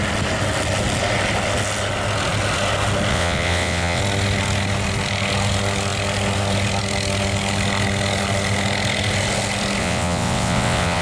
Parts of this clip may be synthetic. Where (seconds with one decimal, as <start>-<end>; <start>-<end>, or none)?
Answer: 3.1-4.0; 9.8-11.0